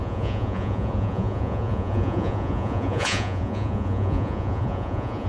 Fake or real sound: fake